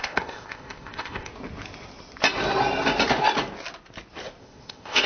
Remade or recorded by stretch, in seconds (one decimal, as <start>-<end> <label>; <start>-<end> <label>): 0.0-1.3 remade; 1.3-4.4 recorded; 4.4-5.1 remade